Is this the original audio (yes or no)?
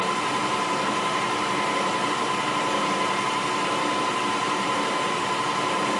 no